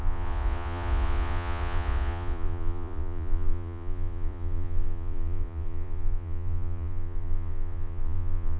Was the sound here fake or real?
fake